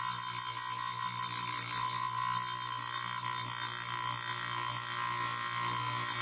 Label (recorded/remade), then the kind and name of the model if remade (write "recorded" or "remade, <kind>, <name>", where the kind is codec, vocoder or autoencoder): recorded